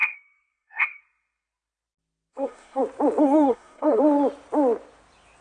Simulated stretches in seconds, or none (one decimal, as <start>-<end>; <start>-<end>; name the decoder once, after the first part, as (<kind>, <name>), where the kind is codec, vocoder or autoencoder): 0.0-1.0 (codec, SNAC); 2.3-2.8; 3.2-4.0